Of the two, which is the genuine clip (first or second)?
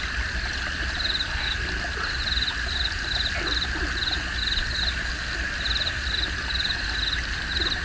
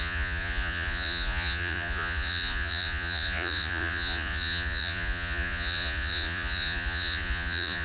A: first